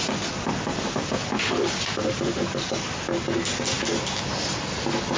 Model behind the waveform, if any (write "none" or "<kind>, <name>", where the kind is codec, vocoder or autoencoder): none